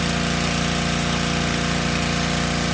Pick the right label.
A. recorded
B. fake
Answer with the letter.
A